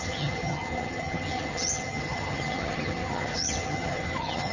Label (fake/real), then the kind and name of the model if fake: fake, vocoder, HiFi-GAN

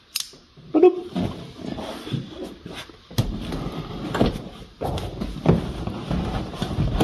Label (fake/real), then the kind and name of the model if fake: real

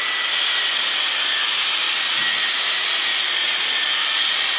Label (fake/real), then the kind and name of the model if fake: real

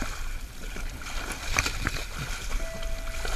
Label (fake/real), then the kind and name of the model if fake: real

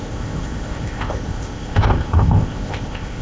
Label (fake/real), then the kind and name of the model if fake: fake, codec, ZipCodec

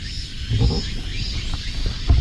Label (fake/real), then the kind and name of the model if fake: real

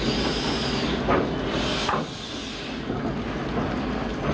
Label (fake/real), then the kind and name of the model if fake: real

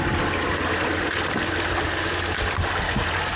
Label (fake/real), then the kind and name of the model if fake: real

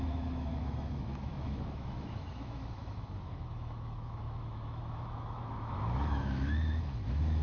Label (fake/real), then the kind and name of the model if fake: fake, autoencoder, DAC-VAE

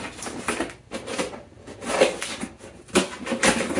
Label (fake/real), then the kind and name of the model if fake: real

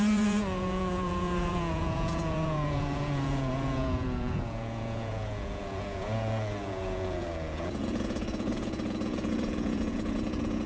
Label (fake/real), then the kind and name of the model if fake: fake, vocoder, Vocos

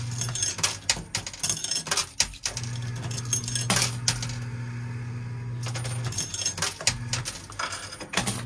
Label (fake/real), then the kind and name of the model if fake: real